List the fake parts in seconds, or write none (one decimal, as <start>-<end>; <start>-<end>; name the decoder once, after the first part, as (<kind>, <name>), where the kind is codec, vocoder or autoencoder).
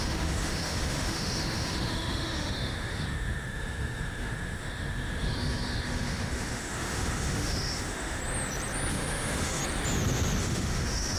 0.0-8.2 (autoencoder, DAC-VAE); 8.9-9.6; 10.4-11.2